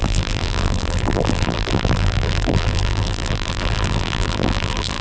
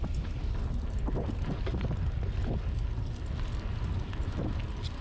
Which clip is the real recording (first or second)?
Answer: second